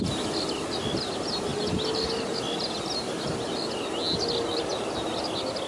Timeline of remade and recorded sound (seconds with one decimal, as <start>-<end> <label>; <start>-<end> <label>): 0.0-5.7 recorded

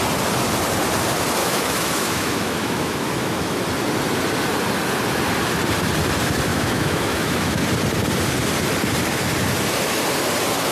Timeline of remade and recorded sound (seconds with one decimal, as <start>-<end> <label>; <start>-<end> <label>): 0.0-1.4 recorded; 1.4-3.6 remade; 3.6-6.5 recorded; 6.5-7.6 remade; 7.6-10.7 recorded

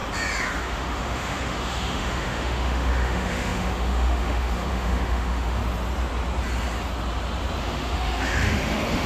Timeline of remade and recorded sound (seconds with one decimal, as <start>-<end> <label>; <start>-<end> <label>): 0.0-0.6 recorded; 0.6-5.6 remade; 5.6-7.6 recorded; 7.6-9.1 remade

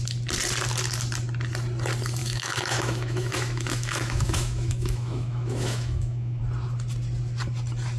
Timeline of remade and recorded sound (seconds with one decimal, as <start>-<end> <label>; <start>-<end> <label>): 0.0-2.2 recorded; 2.2-6.4 remade; 6.4-8.0 recorded

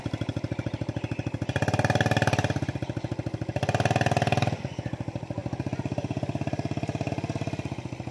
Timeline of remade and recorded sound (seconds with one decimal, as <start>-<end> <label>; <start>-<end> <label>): 0.0-8.1 recorded